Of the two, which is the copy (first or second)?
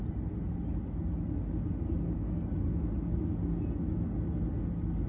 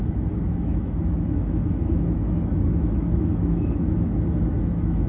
second